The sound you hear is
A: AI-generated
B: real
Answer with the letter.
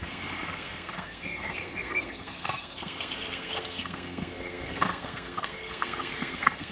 A